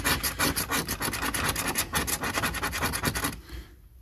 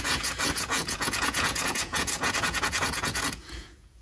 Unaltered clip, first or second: first